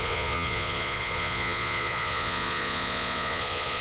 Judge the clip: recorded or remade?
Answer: remade